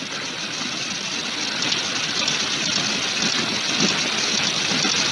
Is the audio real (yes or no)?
yes